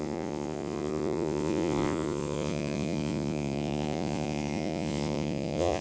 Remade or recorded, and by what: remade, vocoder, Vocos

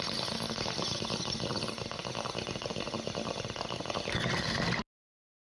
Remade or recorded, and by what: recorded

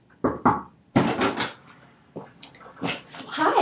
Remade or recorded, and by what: recorded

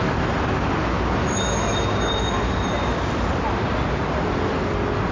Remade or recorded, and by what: recorded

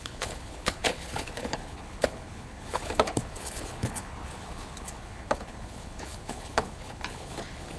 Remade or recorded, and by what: remade, codec, HILCodec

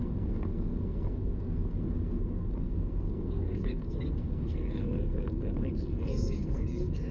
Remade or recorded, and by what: remade, codec, SNAC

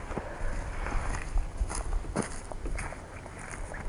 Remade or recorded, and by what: recorded